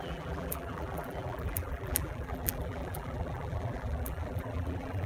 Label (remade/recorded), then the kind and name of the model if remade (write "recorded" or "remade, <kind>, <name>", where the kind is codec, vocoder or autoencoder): remade, vocoder, BigVGAN v2